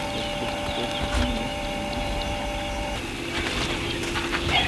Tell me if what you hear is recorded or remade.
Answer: recorded